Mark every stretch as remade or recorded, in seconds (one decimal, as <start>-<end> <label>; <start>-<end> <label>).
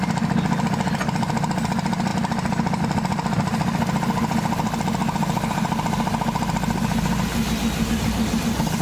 0.0-8.8 recorded